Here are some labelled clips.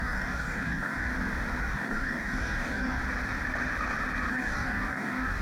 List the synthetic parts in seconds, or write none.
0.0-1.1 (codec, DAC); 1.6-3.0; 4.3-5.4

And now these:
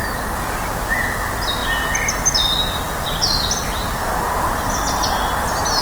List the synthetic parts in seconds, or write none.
none

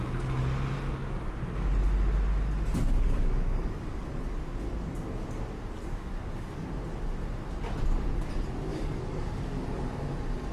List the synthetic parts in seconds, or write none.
2.8-4.0 (codec, DAC); 5.8-6.7; 8.7-10.1